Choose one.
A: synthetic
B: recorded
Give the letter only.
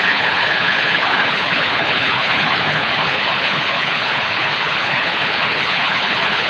A